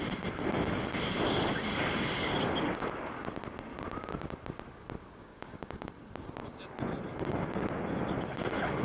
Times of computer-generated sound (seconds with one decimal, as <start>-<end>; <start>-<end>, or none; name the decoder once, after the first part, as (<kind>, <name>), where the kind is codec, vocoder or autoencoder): 5.2-5.9 (codec, DAC)